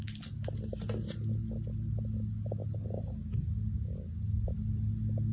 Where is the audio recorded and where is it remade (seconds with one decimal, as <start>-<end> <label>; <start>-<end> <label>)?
0.0-5.3 recorded